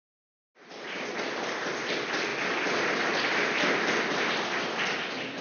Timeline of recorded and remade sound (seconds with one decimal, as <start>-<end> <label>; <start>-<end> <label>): 0.0-5.4 recorded